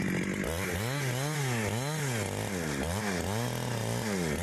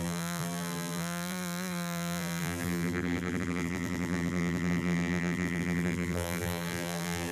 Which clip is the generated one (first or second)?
second